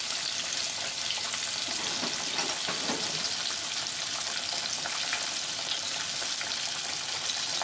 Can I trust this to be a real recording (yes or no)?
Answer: yes